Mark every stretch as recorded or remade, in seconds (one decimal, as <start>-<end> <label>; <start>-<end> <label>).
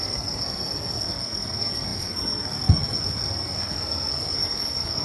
0.0-5.0 remade